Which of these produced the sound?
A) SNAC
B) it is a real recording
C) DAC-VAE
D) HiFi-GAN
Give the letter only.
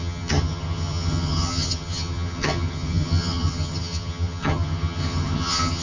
D